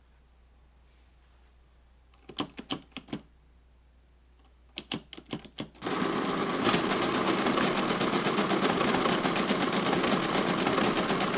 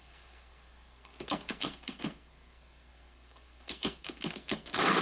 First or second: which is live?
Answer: first